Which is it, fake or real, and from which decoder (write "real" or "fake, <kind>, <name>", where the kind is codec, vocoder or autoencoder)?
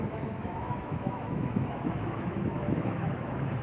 fake, autoencoder, DAC-VAE